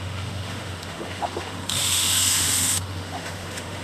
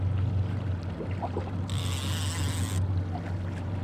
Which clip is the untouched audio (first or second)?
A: second